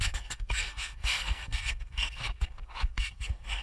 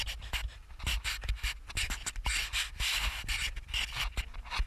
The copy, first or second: first